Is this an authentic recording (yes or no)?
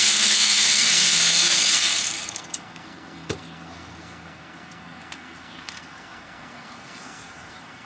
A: no